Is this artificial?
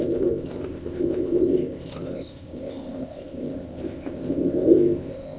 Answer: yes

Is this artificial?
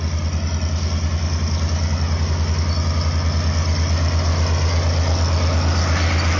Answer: no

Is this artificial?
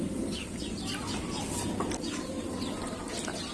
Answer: no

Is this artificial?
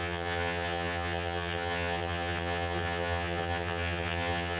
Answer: yes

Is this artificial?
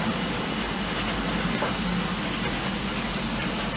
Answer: no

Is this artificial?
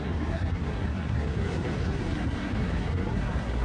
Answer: yes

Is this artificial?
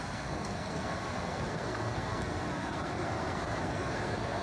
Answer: yes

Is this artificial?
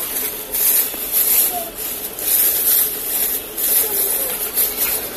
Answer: no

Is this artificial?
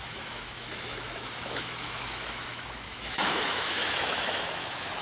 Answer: yes